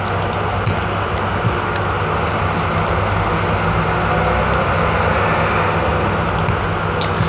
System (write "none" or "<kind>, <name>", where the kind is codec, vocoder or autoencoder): none